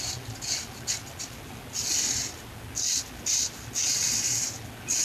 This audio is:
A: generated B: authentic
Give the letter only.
B